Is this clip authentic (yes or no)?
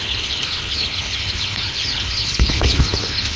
no